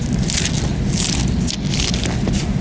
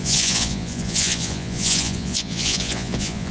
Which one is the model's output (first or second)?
second